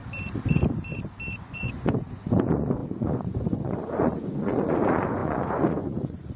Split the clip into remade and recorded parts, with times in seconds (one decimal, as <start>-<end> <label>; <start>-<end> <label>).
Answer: 0.0-1.4 recorded; 1.4-6.4 remade